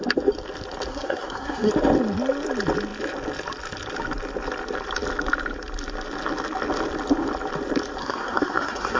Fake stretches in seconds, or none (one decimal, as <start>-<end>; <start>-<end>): 0.9-1.7; 8.0-9.0